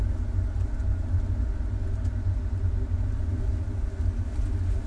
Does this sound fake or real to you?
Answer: real